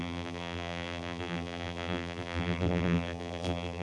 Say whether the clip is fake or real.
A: fake